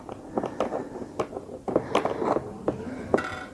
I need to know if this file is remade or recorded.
recorded